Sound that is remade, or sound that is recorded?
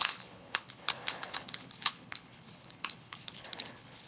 remade